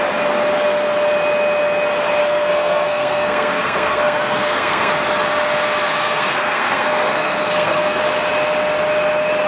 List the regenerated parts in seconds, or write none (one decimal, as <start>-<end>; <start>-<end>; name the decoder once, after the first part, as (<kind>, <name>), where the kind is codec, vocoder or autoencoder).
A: 2.2-4.9 (codec, SNAC); 6.0-8.0